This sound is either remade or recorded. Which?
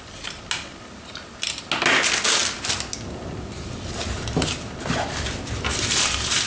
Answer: recorded